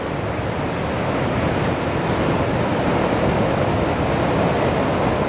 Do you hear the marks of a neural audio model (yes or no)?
no